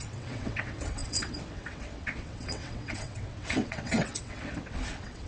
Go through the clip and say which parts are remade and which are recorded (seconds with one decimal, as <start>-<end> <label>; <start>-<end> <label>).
0.0-5.3 remade